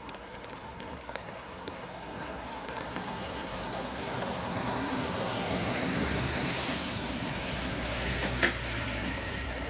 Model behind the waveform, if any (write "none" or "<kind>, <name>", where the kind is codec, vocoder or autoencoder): codec, SNAC